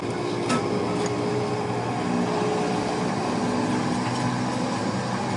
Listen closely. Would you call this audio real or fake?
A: real